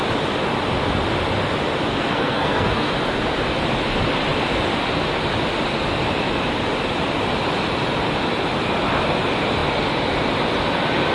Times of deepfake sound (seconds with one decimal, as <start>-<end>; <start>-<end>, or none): 1.9-2.9